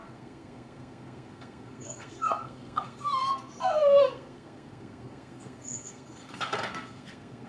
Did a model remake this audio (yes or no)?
yes